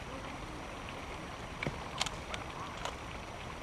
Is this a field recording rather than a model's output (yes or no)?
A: yes